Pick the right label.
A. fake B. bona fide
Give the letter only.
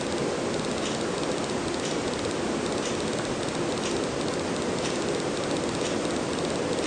B